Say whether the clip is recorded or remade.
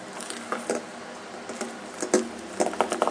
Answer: recorded